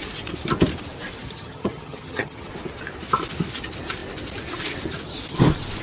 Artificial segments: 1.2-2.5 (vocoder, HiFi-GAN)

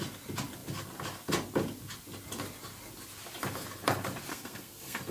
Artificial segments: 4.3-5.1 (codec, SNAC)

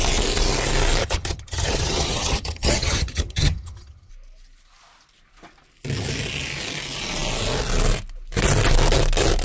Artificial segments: 1.0-4.1 (vocoder, HiFi-GAN)

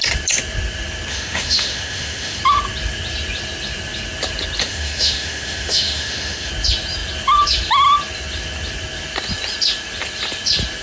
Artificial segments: 1.1-2.4 (autoencoder, DAC-VAE); 4.6-6.5

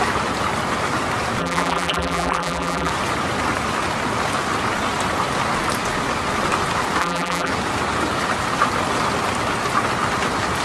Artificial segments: 1.4-2.9 (vocoder, BigVGAN v2); 7.0-7.5

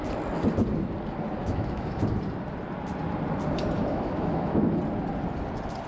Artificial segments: 1.4-2.0 (autoencoder, DAC-VAE); 3.8-4.8